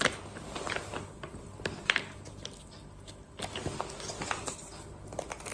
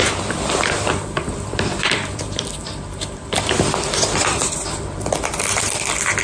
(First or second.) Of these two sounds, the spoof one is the second